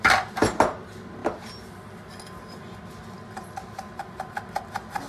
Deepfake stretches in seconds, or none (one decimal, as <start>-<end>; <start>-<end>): none

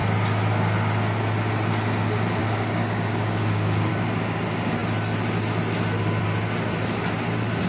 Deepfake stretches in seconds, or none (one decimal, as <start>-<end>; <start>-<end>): 2.4-3.9

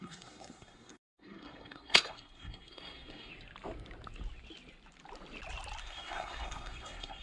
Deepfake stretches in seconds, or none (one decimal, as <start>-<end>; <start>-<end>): 0.0-3.3; 5.8-7.2

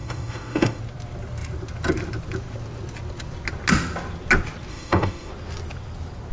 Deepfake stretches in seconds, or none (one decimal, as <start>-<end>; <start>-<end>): 0.0-0.8; 4.7-5.3